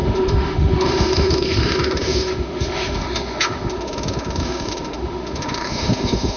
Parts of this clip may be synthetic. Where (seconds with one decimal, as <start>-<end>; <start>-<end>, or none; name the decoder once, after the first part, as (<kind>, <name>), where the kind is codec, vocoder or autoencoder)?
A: 0.0-6.4 (autoencoder, DAC-VAE)